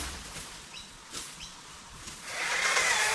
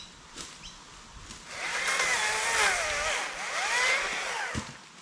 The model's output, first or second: first